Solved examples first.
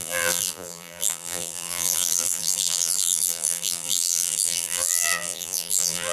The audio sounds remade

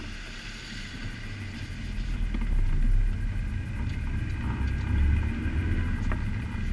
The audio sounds recorded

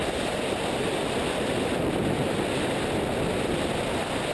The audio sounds recorded